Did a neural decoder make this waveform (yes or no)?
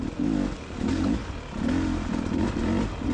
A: no